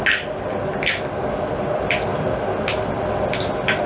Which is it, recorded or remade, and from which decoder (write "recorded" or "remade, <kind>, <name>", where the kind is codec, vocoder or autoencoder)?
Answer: recorded